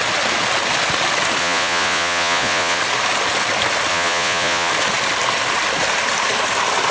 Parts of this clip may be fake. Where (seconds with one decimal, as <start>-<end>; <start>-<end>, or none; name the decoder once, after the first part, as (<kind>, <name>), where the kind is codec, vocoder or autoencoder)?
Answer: 1.4-2.8 (vocoder, Vocos); 3.9-4.7